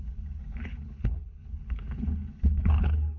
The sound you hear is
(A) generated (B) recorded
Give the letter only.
A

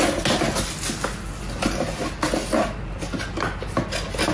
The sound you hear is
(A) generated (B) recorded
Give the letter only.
B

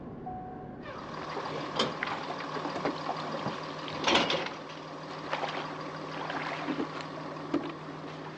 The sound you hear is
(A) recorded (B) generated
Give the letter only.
A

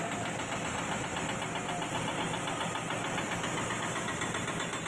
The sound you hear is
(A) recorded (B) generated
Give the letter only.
A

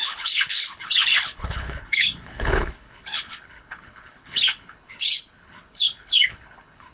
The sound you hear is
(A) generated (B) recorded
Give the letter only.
A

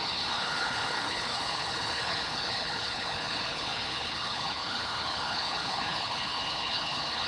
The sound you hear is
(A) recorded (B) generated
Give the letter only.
B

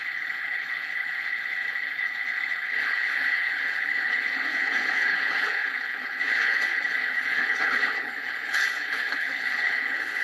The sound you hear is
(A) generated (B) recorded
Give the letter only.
A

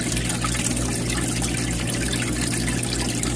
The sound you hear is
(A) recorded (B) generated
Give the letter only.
A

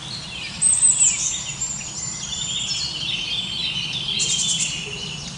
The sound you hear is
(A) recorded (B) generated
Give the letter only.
A